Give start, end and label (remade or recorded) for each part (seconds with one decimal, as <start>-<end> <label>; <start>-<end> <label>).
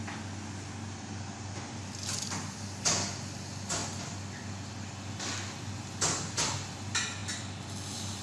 0.0-8.2 recorded